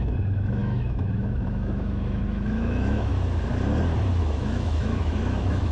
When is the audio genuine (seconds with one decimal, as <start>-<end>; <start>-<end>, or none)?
3.1-4.2